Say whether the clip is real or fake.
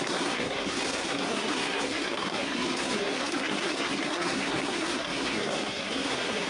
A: fake